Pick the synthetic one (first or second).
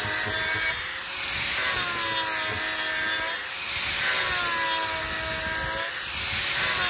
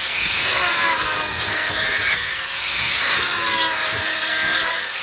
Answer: second